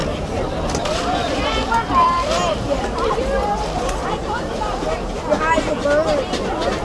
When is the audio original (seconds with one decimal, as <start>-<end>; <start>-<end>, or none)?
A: 3.6-4.2; 5.1-6.8